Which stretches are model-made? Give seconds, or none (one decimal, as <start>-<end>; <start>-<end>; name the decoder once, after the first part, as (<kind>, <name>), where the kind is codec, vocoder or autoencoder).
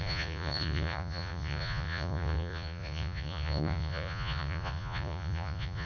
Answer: 0.0-5.9 (vocoder, Vocos)